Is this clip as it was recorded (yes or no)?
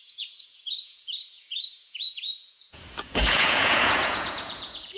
no